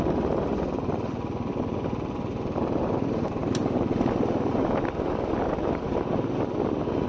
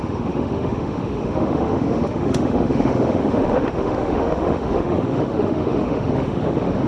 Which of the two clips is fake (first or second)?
second